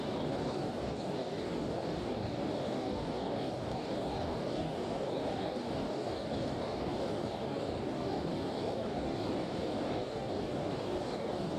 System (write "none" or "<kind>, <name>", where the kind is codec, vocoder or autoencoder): codec, DAC